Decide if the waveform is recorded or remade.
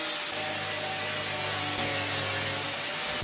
recorded